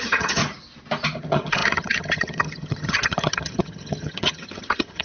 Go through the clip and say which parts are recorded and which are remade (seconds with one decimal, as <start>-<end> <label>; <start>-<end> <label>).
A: 0.0-0.4 remade; 0.4-1.2 recorded; 1.2-5.0 remade